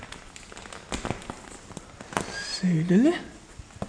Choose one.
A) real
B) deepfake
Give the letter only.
A